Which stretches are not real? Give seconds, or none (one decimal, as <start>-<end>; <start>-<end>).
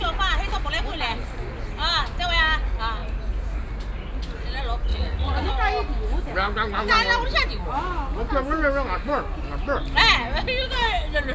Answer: 4.9-5.5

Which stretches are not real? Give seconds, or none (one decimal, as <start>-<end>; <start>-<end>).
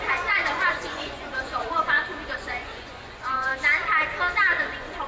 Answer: 0.0-3.5; 4.6-5.1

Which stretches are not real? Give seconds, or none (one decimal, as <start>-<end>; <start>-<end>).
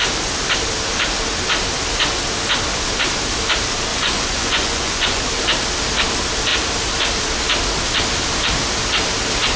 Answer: 3.9-5.2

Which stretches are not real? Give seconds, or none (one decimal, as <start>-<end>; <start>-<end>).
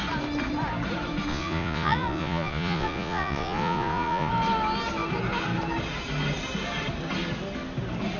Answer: 1.3-4.3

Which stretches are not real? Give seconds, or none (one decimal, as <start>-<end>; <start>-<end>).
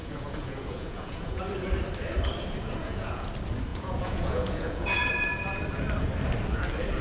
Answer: 0.0-1.4; 2.8-3.3; 3.7-5.1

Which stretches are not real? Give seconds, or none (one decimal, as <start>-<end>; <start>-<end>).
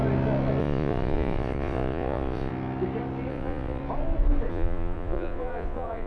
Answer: 0.6-2.5; 3.3-3.8; 4.5-6.1